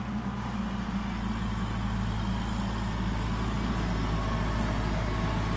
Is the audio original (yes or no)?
yes